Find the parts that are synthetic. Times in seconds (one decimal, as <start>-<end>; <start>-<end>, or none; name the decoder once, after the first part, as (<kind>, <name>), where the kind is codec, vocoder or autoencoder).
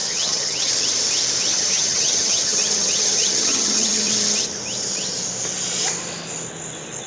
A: 0.0-0.7 (vocoder, HiFi-GAN); 1.5-4.1